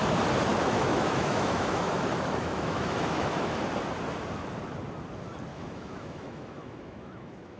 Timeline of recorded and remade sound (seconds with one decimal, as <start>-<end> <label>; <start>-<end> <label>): 0.0-0.5 recorded; 0.5-3.6 remade; 3.6-5.5 recorded; 5.5-7.6 remade